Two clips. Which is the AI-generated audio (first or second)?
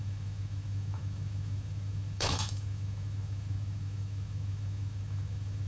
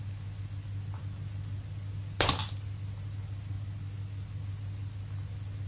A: first